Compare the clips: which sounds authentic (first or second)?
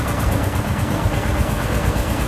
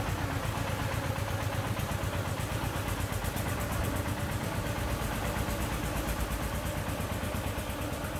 second